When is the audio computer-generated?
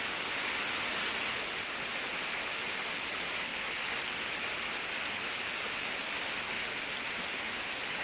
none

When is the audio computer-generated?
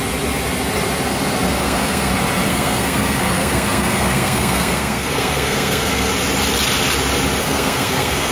1.6-2.1; 2.5-6.1; 7.4-8.3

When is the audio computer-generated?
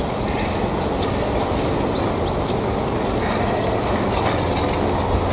none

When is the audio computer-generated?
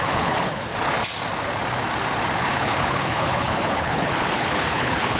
0.0-0.7; 2.4-5.2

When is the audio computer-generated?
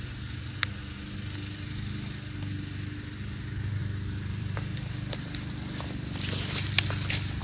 3.8-5.5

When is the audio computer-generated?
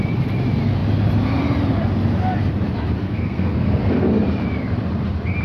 3.0-4.1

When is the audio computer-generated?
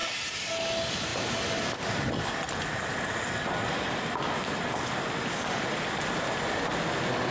none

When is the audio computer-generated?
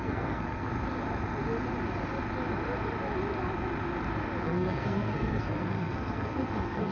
0.0-0.7; 4.4-6.9